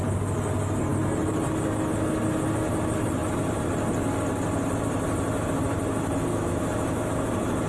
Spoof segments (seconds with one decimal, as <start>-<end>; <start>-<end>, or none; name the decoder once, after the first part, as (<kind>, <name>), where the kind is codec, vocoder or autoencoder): 6.3-7.3 (autoencoder, DAC-VAE)